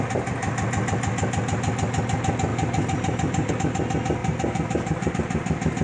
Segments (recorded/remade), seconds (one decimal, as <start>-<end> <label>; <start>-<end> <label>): 0.0-2.5 recorded; 2.5-3.5 remade; 3.5-4.2 recorded; 4.2-5.1 remade; 5.1-5.8 recorded

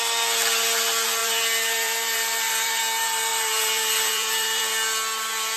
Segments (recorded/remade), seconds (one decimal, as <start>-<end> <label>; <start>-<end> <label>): 0.0-1.2 recorded; 1.2-2.8 remade; 2.8-3.3 recorded; 3.3-4.6 remade; 4.6-5.6 recorded

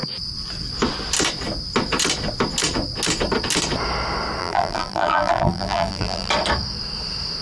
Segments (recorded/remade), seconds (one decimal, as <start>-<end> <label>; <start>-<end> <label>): 0.0-4.4 recorded; 4.4-6.3 remade; 6.3-7.4 recorded

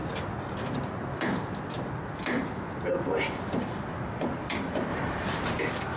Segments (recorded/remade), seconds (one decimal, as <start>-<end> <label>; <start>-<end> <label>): 0.0-4.9 recorded; 4.9-5.6 remade; 5.6-6.0 recorded

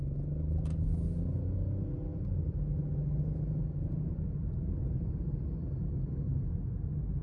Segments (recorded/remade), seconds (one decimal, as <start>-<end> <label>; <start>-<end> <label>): 0.0-7.2 recorded

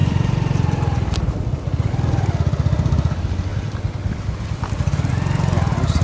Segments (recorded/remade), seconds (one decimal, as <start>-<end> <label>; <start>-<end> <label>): 0.0-1.9 remade; 1.9-3.5 recorded; 3.5-5.1 remade; 5.1-6.0 recorded

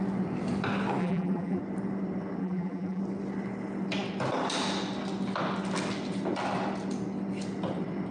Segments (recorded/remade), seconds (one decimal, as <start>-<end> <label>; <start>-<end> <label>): 0.0-1.0 recorded; 1.0-1.6 remade; 1.6-2.4 recorded; 2.4-3.0 remade; 3.0-8.1 recorded